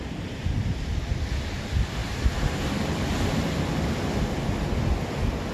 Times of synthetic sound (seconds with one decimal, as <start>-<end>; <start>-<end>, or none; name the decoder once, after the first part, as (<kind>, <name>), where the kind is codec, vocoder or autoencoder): 2.0-3.6 (vocoder, BigVGAN v2)